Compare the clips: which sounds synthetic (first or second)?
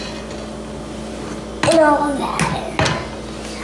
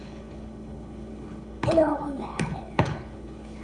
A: second